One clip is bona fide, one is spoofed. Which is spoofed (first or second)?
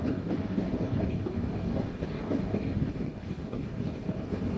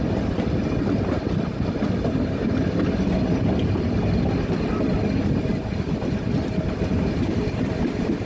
first